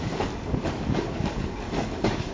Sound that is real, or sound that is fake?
fake